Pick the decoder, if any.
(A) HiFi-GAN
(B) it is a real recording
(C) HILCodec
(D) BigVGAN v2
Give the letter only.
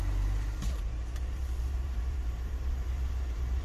D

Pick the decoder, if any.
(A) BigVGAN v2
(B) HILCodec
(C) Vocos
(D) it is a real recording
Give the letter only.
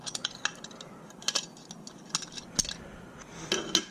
D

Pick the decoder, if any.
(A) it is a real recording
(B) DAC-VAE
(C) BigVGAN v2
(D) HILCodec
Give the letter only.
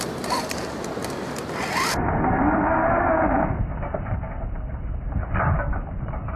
A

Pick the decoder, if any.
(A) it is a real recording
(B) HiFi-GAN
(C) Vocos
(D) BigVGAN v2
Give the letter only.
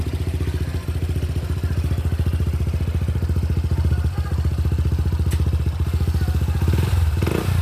A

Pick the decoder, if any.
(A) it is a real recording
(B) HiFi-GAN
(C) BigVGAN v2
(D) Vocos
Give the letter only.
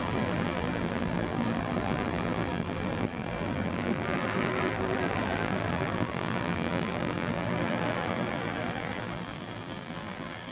C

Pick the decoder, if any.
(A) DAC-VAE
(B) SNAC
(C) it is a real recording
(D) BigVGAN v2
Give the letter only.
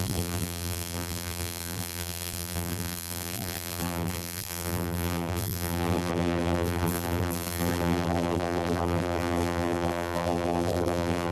D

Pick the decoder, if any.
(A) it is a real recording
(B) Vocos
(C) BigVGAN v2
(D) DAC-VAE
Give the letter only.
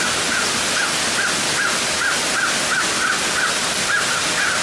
A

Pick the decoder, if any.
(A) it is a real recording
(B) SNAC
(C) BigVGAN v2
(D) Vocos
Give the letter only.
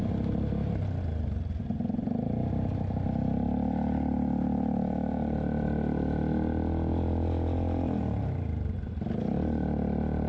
A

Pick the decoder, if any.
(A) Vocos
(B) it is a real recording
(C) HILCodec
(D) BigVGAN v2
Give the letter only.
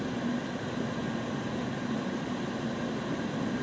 B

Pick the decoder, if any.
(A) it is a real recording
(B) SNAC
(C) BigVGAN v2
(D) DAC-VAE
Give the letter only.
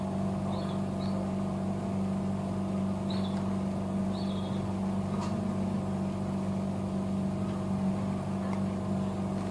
C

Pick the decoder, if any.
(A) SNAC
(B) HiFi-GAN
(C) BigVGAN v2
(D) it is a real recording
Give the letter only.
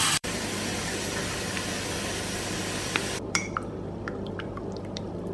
C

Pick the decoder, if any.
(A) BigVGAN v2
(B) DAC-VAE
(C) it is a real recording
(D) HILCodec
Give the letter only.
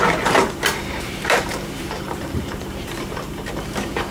A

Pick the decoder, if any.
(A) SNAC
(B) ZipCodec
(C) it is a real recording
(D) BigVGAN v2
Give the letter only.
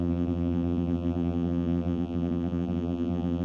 D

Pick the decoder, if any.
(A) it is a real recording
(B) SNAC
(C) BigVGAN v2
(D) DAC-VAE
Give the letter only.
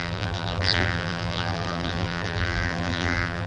C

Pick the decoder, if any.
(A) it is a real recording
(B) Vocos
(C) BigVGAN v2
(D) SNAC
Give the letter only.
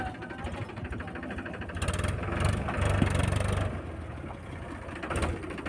A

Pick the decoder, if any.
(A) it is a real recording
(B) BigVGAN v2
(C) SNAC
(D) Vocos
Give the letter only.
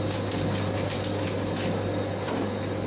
A